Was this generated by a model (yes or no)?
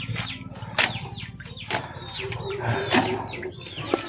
no